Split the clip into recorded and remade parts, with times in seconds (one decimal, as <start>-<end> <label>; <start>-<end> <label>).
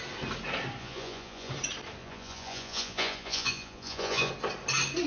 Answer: 0.0-0.8 recorded; 0.8-1.5 remade; 1.5-2.0 recorded; 2.0-4.3 remade; 4.3-5.1 recorded